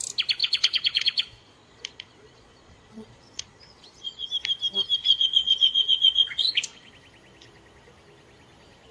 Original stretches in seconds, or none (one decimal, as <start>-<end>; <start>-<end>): 0.0-0.4; 4.3-5.0; 6.9-8.9